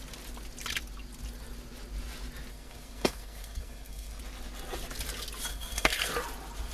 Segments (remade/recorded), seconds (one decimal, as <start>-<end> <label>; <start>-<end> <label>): 0.0-2.5 recorded; 2.5-4.2 remade; 4.2-5.5 recorded; 5.5-6.1 remade; 6.1-6.7 recorded